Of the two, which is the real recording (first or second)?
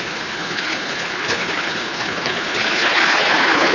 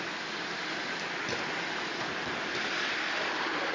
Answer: second